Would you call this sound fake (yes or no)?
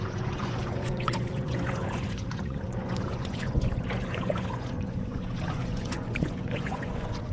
yes